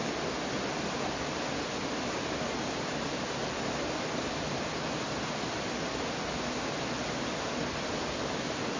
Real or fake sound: real